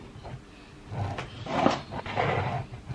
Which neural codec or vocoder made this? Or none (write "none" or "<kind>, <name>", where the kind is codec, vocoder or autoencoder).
none